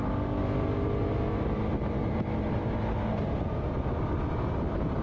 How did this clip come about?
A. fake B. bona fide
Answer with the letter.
B